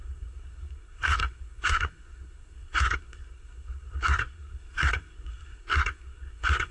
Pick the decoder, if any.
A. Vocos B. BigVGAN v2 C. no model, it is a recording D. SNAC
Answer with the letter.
D